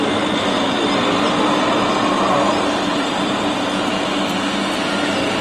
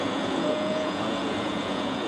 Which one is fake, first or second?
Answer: second